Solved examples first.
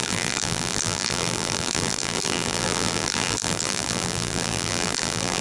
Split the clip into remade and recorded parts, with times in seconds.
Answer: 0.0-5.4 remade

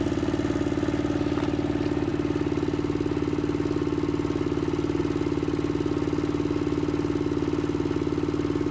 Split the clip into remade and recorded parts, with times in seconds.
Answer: 0.0-8.7 recorded

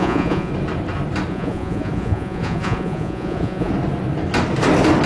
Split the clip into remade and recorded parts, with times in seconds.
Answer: 0.0-0.5 remade; 0.5-1.3 recorded; 1.3-3.7 remade; 3.7-5.1 recorded

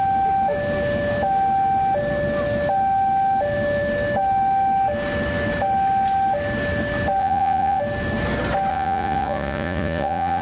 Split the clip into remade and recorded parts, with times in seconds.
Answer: 0.0-7.2 recorded; 7.2-7.8 remade; 7.8-8.7 recorded; 8.7-10.4 remade

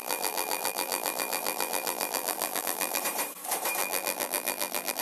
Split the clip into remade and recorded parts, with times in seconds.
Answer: 0.0-3.0 remade; 3.0-3.8 recorded; 3.8-5.0 remade

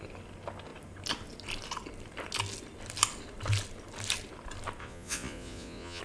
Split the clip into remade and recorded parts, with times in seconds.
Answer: 0.0-4.8 recorded; 4.8-6.0 remade

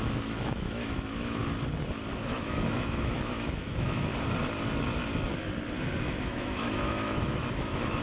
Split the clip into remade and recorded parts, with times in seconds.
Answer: 0.0-1.4 remade; 1.4-2.1 recorded; 2.1-4.1 remade; 4.1-6.0 recorded; 6.0-8.0 remade